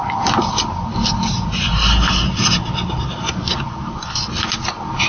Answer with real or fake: real